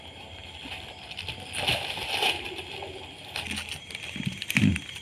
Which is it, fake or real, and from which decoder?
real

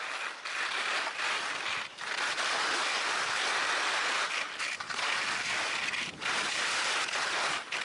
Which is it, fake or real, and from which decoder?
fake, vocoder, BigVGAN v2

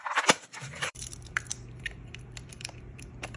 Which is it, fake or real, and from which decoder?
fake, vocoder, BigVGAN v2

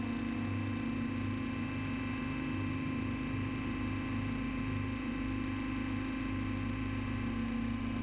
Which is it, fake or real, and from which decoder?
real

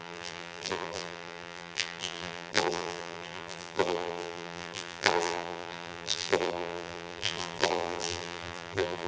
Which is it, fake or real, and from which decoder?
fake, vocoder, BigVGAN v2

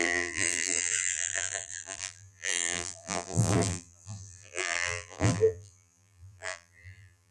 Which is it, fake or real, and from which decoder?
fake, vocoder, BigVGAN v2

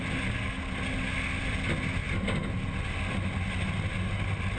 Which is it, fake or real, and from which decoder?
real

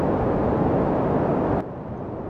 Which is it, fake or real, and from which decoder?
real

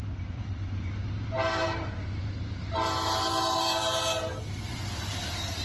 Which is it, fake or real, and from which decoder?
fake, vocoder, BigVGAN v2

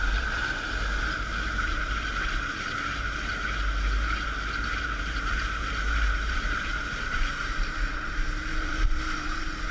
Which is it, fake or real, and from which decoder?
fake, vocoder, BigVGAN v2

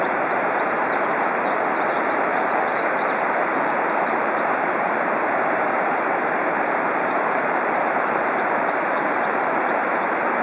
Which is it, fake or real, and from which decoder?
fake, vocoder, BigVGAN v2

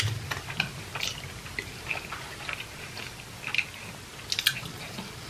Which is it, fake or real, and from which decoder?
real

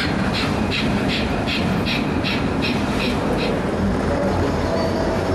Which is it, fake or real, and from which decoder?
fake, vocoder, BigVGAN v2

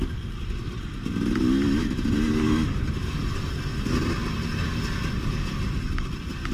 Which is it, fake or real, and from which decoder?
real